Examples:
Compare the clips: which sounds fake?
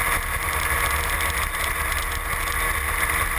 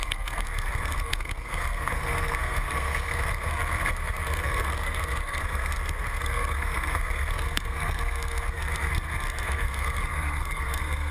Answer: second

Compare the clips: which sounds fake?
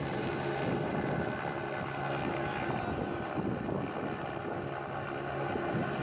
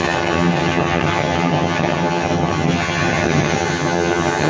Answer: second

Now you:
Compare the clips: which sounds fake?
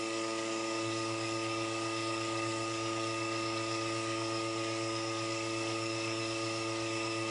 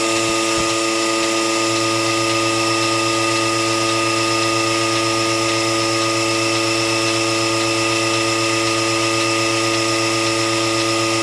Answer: first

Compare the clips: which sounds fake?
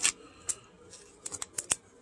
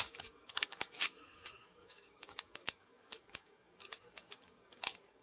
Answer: second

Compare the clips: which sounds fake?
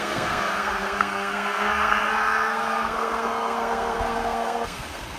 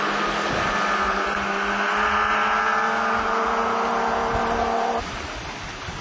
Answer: first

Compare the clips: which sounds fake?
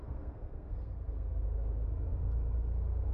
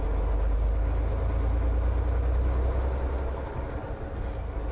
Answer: first